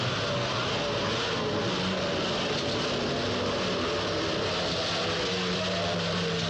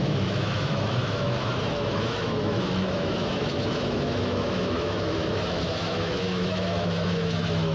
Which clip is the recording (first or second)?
first